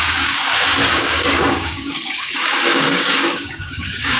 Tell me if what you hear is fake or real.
fake